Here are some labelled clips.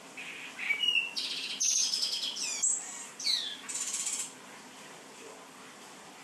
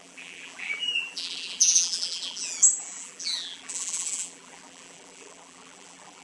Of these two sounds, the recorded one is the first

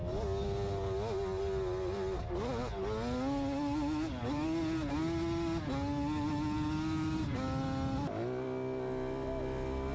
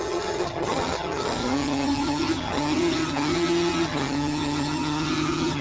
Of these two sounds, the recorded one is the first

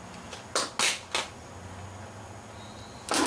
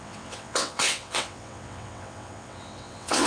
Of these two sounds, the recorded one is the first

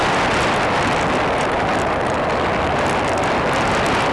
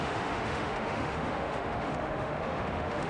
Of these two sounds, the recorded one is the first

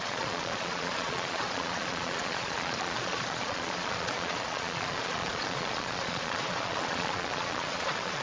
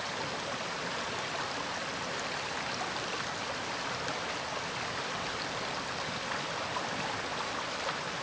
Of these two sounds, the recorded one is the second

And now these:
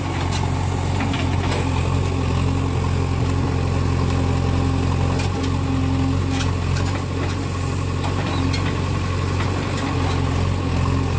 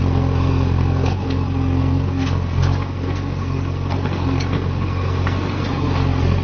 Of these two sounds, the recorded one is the first